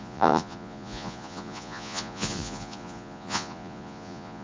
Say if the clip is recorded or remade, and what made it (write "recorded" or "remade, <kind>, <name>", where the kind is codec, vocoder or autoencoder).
remade, vocoder, Vocos